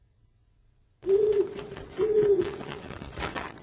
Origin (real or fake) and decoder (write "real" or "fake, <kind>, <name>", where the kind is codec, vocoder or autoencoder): fake, vocoder, WaveNeXt